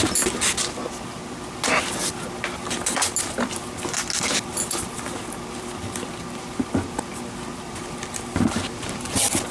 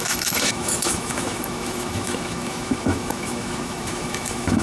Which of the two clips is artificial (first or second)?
second